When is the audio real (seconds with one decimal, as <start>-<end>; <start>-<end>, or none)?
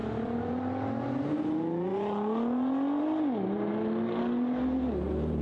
0.5-5.4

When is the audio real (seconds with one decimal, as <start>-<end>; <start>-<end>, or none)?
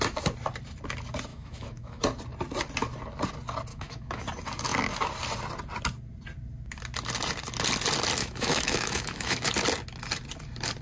0.0-1.3; 2.0-3.7; 4.2-8.2; 9.5-10.8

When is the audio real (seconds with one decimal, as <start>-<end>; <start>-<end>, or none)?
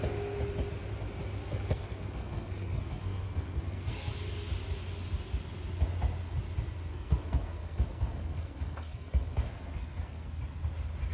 0.0-1.4; 4.1-6.9; 10.4-11.1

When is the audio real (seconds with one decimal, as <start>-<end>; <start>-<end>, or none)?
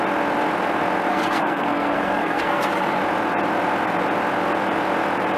0.0-1.1; 3.0-5.4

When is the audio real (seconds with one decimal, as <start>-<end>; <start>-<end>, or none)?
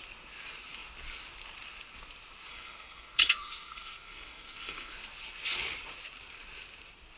0.0-2.5; 4.9-7.2